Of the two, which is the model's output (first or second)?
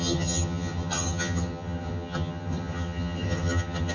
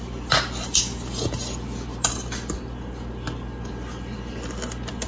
first